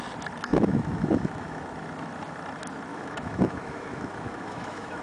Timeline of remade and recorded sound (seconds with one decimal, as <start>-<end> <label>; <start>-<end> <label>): 0.0-0.5 recorded; 0.5-1.6 remade; 1.6-2.9 recorded; 2.9-5.0 remade